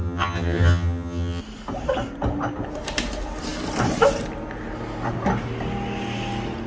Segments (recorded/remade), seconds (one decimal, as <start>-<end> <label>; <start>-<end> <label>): 0.0-1.4 remade; 1.4-6.7 recorded